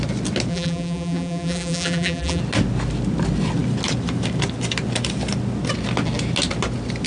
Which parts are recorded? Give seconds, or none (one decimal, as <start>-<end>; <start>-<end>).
0.0-0.5; 2.4-7.1